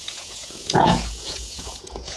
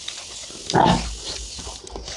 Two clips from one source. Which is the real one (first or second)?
second